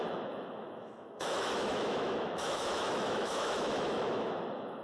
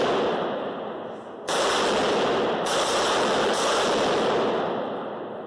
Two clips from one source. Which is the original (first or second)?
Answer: second